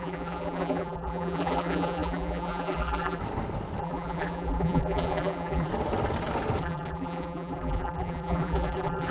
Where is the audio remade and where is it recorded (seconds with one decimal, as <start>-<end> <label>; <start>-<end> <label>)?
0.0-3.2 remade; 3.2-3.8 recorded; 3.8-5.7 remade; 5.7-6.6 recorded; 6.6-9.1 remade